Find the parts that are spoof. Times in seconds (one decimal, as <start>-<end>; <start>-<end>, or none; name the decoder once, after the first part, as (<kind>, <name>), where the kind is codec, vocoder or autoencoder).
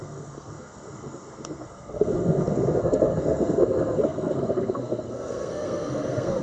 0.0-6.4 (codec, SNAC)